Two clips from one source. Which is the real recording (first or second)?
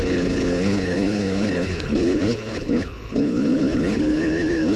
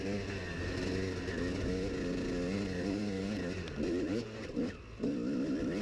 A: second